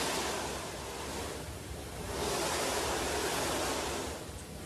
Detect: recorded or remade recorded